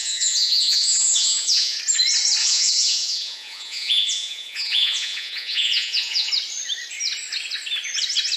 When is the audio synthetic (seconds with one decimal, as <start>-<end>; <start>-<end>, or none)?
0.0-1.8; 2.4-6.3